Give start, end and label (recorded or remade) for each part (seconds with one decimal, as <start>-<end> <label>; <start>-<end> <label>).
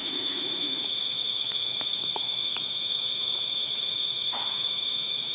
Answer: 0.0-5.3 remade